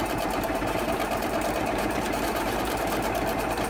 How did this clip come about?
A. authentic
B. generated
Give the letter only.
B